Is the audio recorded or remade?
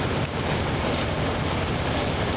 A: remade